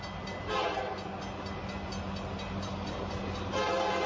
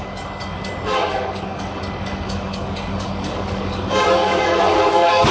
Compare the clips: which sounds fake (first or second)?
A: second